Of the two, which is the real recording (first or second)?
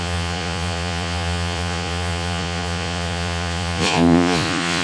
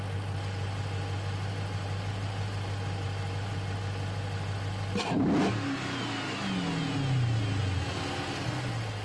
second